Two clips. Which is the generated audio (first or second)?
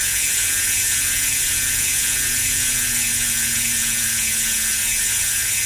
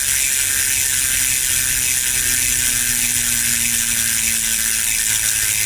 first